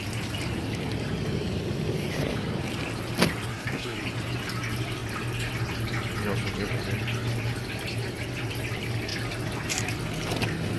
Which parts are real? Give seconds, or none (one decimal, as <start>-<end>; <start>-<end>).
0.0-3.5; 4.0-10.8